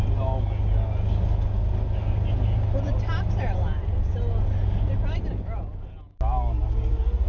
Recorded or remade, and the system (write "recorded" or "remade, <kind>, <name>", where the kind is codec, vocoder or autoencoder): recorded